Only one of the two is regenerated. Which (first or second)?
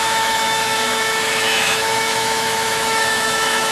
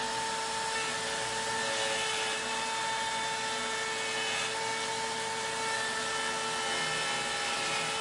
first